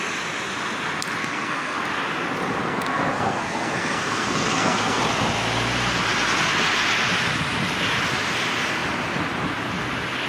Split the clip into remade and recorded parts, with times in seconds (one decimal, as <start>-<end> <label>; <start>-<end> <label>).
0.0-1.2 recorded; 1.2-1.8 remade; 1.8-2.6 recorded; 2.6-5.0 remade; 5.0-10.3 recorded